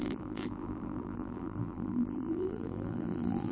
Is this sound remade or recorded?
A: remade